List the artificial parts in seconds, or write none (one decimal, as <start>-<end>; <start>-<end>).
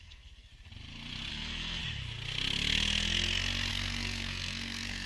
0.0-0.5; 1.3-1.8; 3.7-5.1